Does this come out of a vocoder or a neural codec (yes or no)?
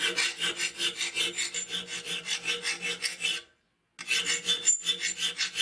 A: no